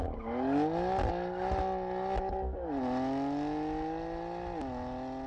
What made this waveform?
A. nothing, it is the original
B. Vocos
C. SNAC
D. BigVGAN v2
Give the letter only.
A